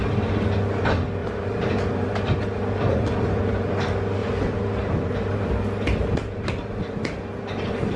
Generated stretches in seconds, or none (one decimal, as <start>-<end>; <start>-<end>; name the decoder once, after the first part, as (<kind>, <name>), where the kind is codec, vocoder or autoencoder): 1.2-3.7 (vocoder, BigVGAN v2); 4.2-5.5